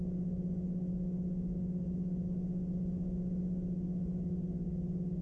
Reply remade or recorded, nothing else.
recorded